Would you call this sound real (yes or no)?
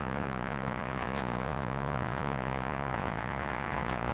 no